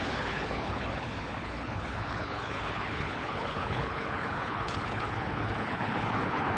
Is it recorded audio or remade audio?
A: remade